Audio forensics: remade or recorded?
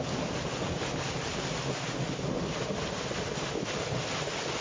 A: recorded